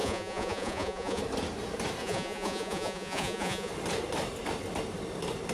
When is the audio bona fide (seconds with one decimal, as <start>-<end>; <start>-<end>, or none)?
1.2-2.0; 3.7-5.5